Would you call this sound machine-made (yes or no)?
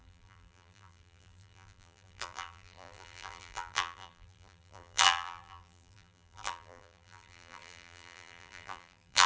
yes